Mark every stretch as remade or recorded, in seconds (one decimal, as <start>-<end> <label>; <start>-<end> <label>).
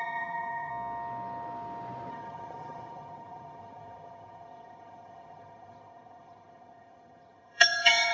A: 0.0-0.7 remade; 0.7-2.1 recorded; 2.1-8.1 remade